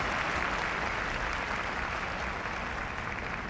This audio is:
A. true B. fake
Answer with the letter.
A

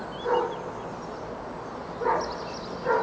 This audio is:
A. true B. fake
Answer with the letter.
A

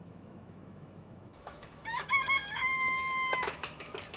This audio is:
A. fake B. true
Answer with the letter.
A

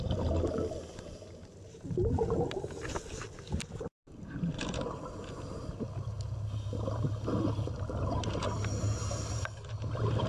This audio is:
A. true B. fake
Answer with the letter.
A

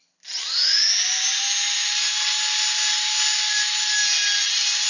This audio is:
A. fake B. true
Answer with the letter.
B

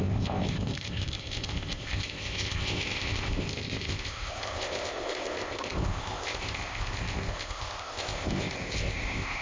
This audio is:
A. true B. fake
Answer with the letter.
B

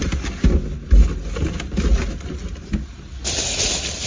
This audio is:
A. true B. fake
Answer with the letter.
A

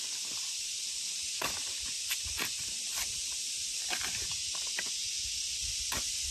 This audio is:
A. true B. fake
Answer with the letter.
A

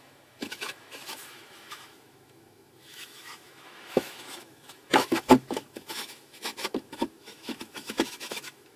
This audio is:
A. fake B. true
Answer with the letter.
A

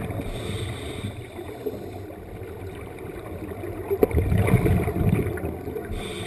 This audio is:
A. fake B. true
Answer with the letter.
B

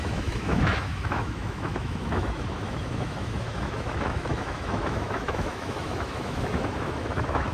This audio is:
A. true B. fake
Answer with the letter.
B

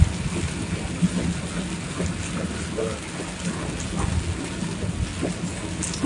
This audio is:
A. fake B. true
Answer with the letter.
B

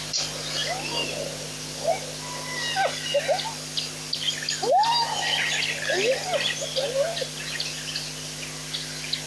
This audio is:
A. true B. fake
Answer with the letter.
A